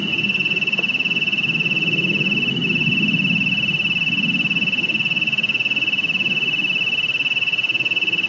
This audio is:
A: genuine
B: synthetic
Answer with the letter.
A